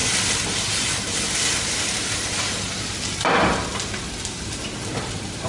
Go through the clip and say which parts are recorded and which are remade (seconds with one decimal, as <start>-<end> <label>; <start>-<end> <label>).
0.0-5.5 recorded